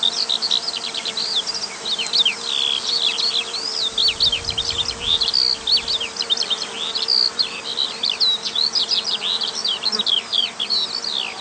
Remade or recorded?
recorded